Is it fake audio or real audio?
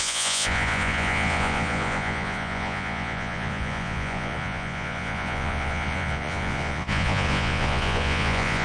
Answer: fake